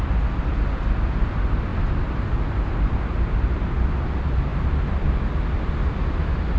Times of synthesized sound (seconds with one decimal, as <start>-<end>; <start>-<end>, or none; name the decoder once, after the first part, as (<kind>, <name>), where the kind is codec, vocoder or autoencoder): none